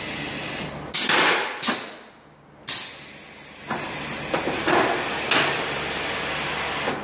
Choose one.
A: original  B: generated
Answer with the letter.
A